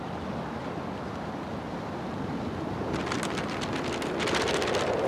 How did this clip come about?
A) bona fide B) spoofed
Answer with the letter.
A